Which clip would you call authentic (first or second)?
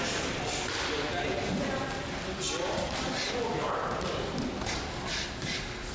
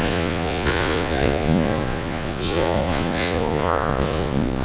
first